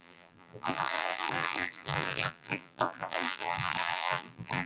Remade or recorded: remade